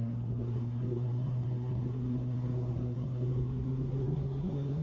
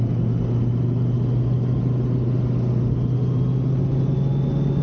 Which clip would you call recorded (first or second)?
second